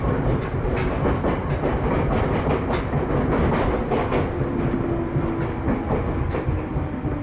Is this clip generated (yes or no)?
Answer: no